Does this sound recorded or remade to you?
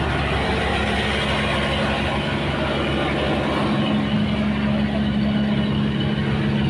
recorded